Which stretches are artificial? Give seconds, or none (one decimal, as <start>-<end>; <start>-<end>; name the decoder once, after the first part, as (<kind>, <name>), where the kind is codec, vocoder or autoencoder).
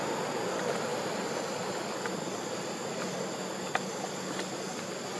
0.9-2.2 (vocoder, BigVGAN v2)